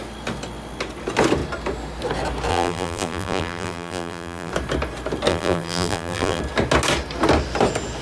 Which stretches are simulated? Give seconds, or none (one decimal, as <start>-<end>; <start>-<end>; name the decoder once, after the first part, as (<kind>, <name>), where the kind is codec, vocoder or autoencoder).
2.5-4.5 (vocoder, BigVGAN v2); 5.3-6.4